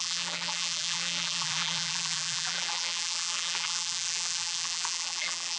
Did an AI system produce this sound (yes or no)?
yes